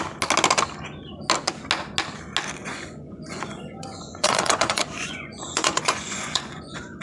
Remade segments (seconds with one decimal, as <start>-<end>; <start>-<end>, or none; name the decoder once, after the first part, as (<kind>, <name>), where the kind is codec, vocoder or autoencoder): 2.6-7.0 (vocoder, Vocos)